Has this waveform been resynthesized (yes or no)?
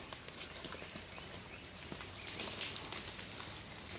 no